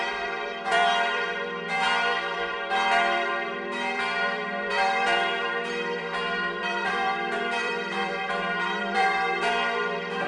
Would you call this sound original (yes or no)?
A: no